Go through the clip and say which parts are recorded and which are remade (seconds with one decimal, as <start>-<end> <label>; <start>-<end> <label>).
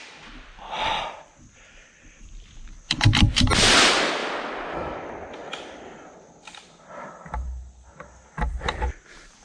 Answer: 0.0-4.2 remade; 4.2-8.1 recorded; 8.1-9.4 remade